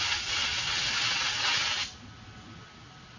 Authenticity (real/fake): real